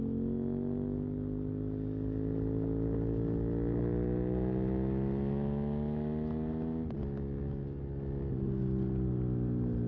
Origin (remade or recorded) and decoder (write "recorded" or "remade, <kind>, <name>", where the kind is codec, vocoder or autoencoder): recorded